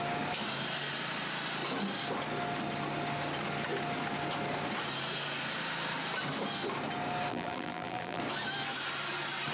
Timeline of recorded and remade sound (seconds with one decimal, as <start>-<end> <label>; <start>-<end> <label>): 0.0-7.3 recorded; 7.3-8.2 remade; 8.2-9.5 recorded